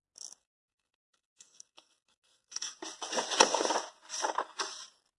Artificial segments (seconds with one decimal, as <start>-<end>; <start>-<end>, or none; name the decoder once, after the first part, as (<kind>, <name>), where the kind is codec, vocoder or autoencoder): 0.4-2.7 (codec, SNAC)